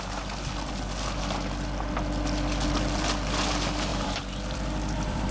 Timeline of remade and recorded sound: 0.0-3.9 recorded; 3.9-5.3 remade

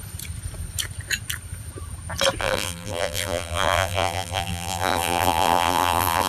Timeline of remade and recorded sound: 0.0-2.4 recorded; 2.4-6.3 remade

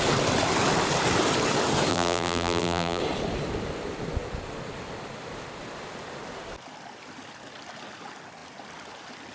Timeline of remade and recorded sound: 0.0-1.9 recorded; 1.9-3.0 remade; 3.0-9.3 recorded